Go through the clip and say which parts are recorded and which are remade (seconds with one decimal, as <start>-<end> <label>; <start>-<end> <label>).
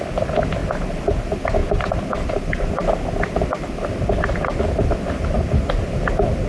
0.0-1.6 recorded; 1.6-2.4 remade; 2.4-6.5 recorded